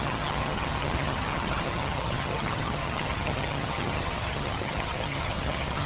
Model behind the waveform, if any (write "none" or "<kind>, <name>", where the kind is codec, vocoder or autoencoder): vocoder, HiFi-GAN